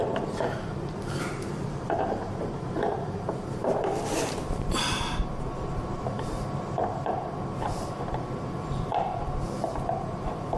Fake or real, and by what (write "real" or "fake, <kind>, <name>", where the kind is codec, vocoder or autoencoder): fake, vocoder, BigVGAN v2